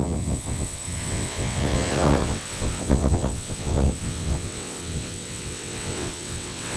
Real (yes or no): no